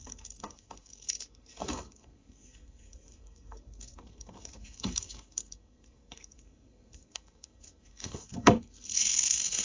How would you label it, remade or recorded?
remade